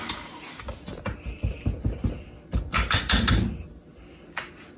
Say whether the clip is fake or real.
real